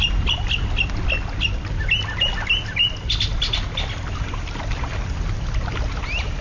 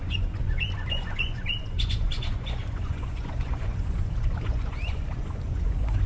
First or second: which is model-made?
second